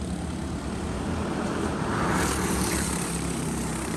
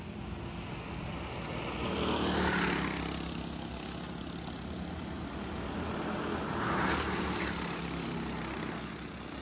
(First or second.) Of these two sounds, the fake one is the first